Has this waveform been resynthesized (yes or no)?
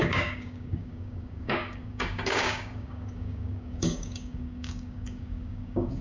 yes